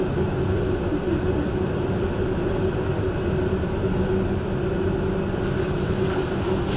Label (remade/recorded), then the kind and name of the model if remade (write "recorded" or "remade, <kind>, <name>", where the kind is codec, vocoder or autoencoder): recorded